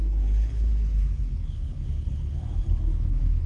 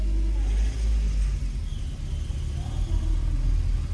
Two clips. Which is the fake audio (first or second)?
first